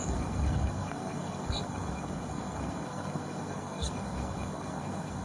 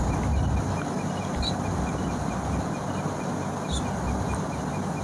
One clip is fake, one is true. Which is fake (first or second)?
first